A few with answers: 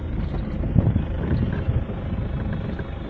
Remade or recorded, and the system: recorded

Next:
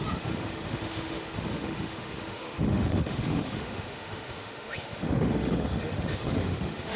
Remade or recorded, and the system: remade, autoencoder, DAC-VAE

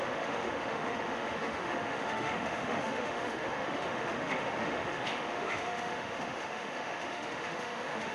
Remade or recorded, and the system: remade, autoencoder, DAC-VAE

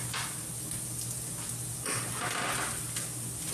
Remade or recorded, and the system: recorded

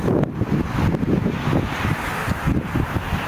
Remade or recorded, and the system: recorded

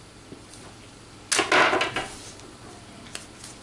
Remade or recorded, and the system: recorded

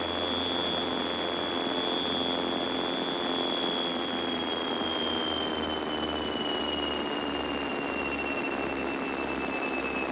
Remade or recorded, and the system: recorded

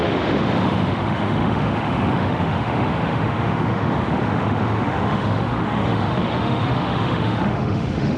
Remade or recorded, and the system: remade, autoencoder, DAC-VAE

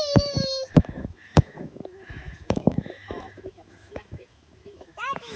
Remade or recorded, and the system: remade, autoencoder, DAC-VAE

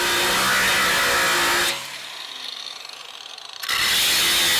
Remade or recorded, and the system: recorded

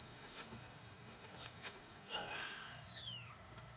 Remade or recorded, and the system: remade, autoencoder, DAC-VAE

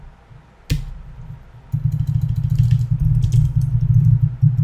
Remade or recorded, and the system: recorded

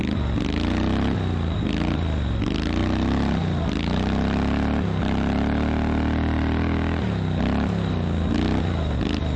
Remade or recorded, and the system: recorded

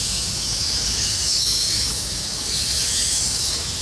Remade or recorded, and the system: remade, autoencoder, DAC-VAE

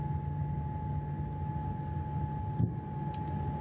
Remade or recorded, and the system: recorded